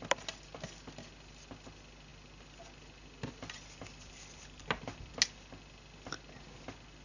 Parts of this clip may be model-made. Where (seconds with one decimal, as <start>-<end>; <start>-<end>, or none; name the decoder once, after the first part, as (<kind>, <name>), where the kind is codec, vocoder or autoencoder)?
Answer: none